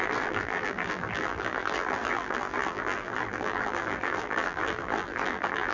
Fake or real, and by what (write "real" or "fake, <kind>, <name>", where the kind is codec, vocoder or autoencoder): fake, vocoder, BigVGAN v2